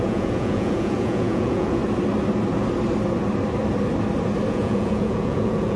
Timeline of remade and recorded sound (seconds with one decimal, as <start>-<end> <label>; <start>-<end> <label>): 0.0-1.8 remade; 1.8-4.5 recorded; 4.5-5.8 remade